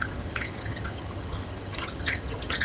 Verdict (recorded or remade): remade